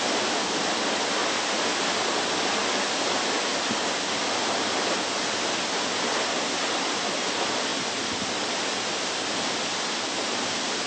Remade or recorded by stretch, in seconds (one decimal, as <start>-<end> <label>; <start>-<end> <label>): 0.0-10.9 recorded